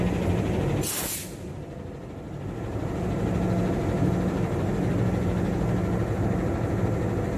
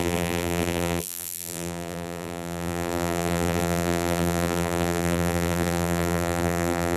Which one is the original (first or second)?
first